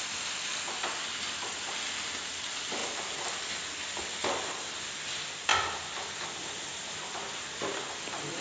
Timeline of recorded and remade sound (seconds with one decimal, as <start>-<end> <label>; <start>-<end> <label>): 0.0-8.4 recorded